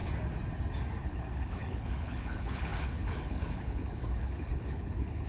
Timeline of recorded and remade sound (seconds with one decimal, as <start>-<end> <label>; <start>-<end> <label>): 0.0-1.0 recorded; 1.0-5.3 remade